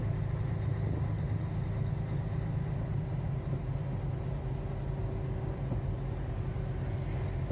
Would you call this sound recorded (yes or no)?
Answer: yes